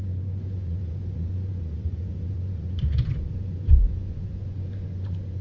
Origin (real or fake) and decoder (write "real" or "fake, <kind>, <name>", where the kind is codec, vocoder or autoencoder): fake, vocoder, Vocos